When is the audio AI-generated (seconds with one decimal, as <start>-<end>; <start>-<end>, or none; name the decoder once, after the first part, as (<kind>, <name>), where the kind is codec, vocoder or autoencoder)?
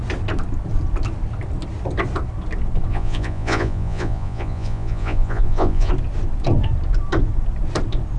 2.9-5.9 (vocoder, Vocos)